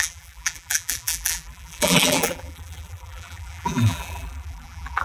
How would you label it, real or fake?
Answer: fake